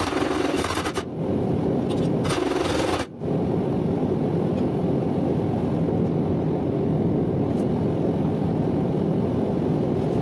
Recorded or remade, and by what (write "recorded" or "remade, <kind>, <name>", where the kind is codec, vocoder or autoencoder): recorded